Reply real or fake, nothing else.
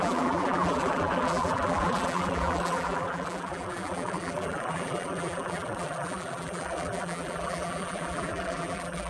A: fake